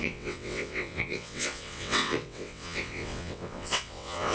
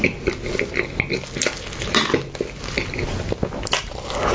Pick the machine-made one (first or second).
first